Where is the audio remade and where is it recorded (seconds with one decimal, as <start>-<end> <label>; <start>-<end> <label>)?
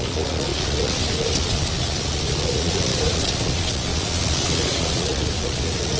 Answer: 0.0-6.0 remade